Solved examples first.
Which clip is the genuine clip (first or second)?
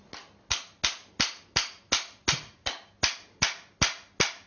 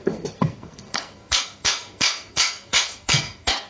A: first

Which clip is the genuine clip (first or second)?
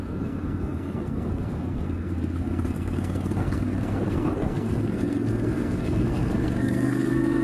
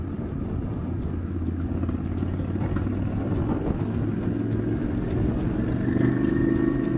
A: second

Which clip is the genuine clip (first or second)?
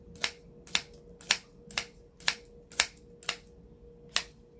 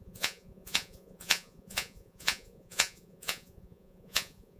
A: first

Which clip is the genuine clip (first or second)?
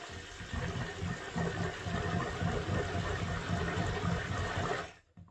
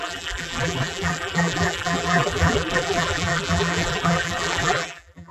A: first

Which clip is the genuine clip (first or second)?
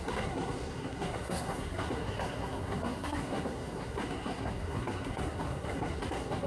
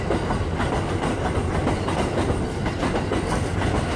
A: second